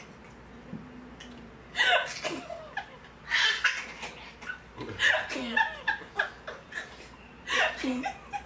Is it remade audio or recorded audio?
recorded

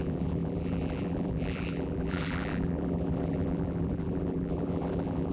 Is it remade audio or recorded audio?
remade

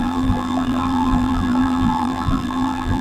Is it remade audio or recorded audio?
remade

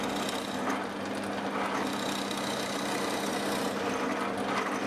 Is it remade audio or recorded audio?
recorded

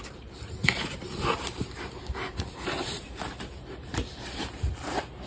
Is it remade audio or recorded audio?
remade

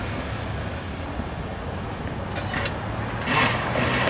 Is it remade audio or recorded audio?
recorded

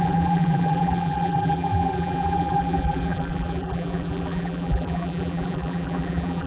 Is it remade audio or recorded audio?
remade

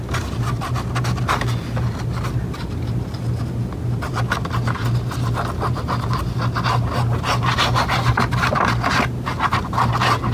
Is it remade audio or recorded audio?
recorded